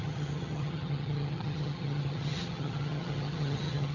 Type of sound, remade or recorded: remade